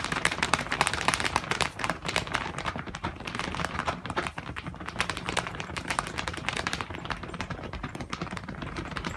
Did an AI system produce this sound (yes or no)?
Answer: yes